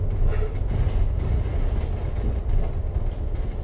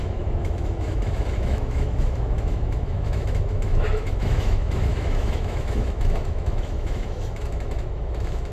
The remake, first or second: second